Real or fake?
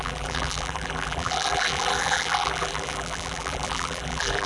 fake